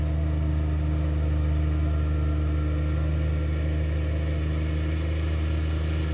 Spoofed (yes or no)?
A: no